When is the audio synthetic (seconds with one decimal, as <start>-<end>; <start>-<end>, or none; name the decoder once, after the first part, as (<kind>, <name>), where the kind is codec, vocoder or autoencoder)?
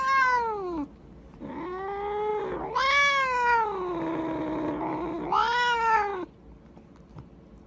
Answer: none